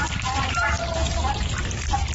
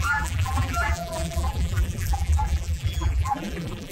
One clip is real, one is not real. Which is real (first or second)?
first